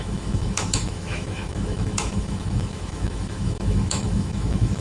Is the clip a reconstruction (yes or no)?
yes